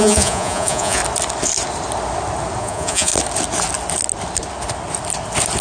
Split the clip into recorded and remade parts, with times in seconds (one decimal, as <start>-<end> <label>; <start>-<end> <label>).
0.0-1.0 remade; 1.0-2.6 recorded; 2.6-3.1 remade; 3.1-5.6 recorded